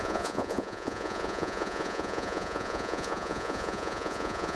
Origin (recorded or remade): remade